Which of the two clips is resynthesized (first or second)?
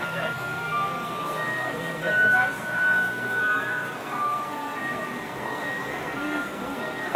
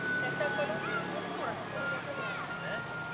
first